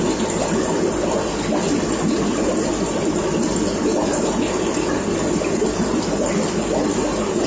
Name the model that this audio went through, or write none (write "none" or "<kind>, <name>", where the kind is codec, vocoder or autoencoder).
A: none